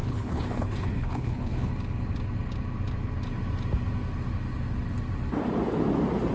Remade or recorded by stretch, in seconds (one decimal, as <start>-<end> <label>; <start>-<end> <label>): 0.0-1.7 remade; 1.7-6.3 recorded

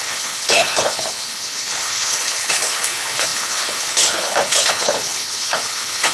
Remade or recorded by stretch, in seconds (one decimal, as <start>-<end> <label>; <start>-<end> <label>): 0.0-6.1 remade

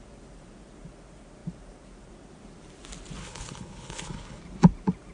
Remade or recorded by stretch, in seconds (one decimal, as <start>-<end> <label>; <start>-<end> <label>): 0.0-3.2 recorded; 3.2-4.4 remade; 4.4-5.1 recorded

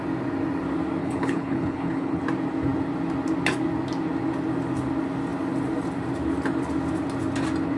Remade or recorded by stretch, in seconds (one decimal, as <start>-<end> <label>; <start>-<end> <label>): 0.0-1.0 recorded; 1.0-2.2 remade; 2.2-7.8 recorded

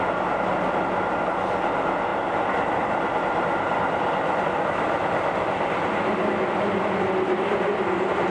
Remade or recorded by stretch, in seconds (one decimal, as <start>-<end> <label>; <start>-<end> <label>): 0.0-8.3 recorded

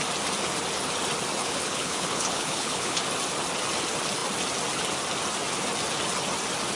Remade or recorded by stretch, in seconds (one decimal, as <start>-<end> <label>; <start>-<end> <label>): 0.0-1.4 recorded; 1.4-3.0 remade; 3.0-6.8 recorded

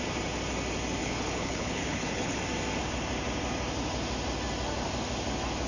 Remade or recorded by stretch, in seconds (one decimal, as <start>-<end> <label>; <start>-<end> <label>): 0.0-1.0 recorded; 1.0-2.4 remade; 2.4-5.7 recorded

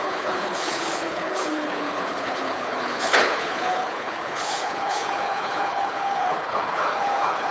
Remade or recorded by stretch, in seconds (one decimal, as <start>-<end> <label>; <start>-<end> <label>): 0.0-7.5 remade